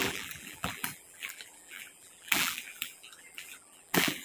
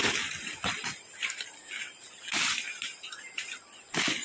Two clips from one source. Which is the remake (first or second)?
first